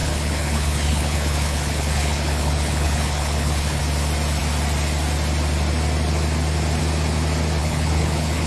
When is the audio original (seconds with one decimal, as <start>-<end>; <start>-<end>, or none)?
3.8-7.6